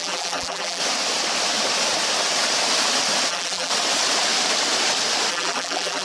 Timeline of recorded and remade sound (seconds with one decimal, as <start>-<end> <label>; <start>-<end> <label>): 0.0-0.8 remade; 0.8-3.3 recorded; 3.3-3.7 remade; 3.7-5.3 recorded; 5.3-6.0 remade